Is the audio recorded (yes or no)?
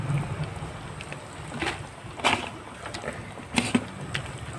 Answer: yes